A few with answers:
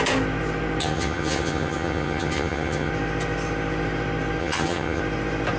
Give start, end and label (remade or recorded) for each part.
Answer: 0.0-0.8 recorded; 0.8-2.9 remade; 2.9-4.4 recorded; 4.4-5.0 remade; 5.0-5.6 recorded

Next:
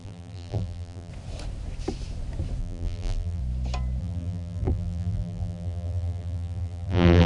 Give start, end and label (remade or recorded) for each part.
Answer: 0.0-1.1 remade; 1.1-2.6 recorded; 2.6-3.4 remade; 3.4-4.0 recorded; 4.0-7.3 remade

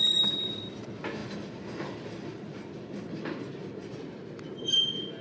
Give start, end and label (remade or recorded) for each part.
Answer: 0.0-5.2 recorded